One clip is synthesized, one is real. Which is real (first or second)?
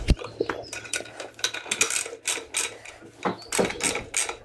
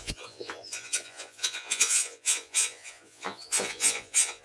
first